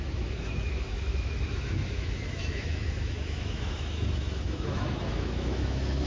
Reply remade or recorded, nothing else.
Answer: remade